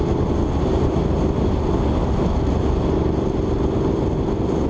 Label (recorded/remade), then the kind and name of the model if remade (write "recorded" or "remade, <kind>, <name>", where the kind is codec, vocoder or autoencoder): recorded